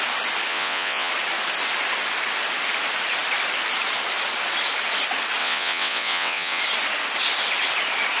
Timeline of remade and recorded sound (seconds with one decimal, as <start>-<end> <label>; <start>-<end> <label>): 0.0-0.5 recorded; 0.5-1.1 remade; 1.1-5.4 recorded; 5.4-6.6 remade; 6.6-8.2 recorded